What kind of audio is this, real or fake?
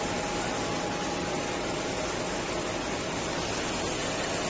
real